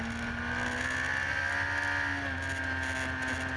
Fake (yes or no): no